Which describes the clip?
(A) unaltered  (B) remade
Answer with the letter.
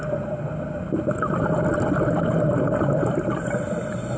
A